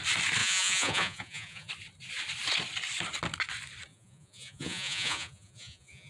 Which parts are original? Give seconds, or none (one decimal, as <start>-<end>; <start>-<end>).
0.0-0.4; 1.7-3.9